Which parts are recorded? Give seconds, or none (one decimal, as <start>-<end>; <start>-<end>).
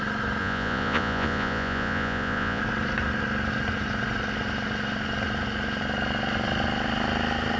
0.0-0.4; 2.6-7.6